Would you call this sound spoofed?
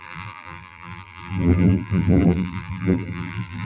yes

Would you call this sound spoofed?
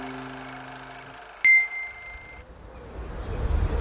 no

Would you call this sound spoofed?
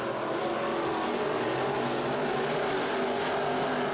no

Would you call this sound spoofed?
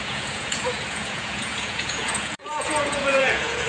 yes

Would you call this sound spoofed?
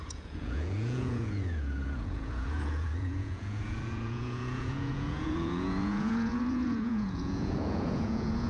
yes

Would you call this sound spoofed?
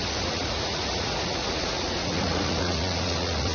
yes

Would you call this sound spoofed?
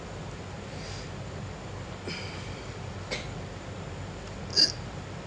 no